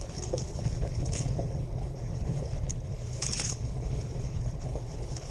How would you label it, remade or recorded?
remade